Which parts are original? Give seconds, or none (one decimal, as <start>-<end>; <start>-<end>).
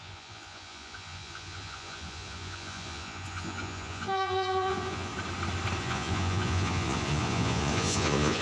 5.1-5.8